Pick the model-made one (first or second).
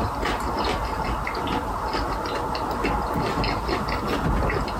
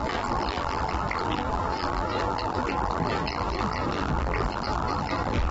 second